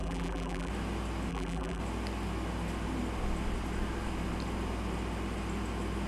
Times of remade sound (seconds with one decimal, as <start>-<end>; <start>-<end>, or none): 0.0-0.7; 1.3-1.8

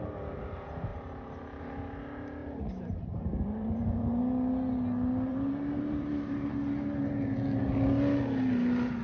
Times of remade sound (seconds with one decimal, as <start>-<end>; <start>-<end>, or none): 0.9-1.6; 2.4-4.2; 5.3-6.5

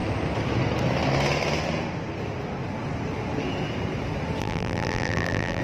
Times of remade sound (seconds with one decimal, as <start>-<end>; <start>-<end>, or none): 4.4-5.6